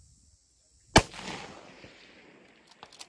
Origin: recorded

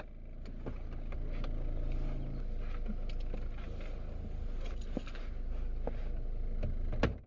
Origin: recorded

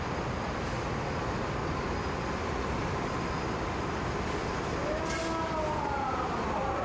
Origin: recorded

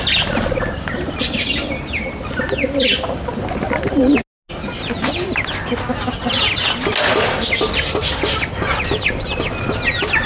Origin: recorded